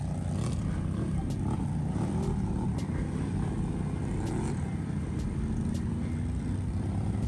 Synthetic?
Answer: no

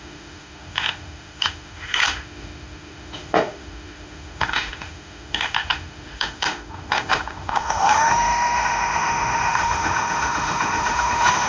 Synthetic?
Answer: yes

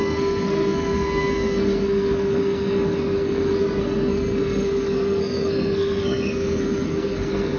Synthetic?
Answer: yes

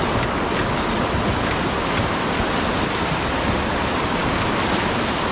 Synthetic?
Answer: no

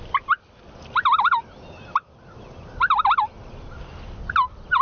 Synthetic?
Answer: no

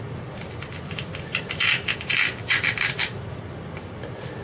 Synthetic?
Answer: no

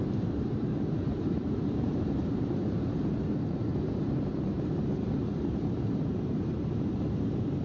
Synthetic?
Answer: yes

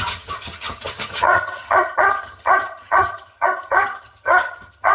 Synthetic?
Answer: yes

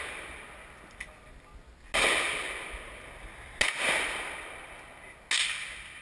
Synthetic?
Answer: no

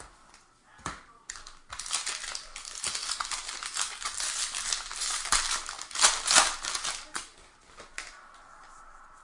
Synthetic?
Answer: no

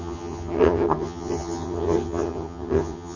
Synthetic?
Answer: yes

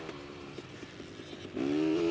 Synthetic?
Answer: yes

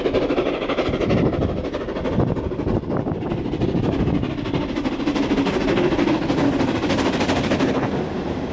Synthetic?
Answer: no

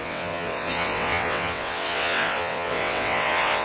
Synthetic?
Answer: yes